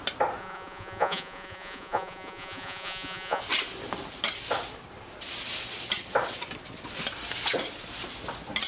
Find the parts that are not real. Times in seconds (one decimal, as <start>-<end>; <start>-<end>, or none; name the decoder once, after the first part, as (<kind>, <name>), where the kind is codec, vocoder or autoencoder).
0.4-3.4 (vocoder, Vocos)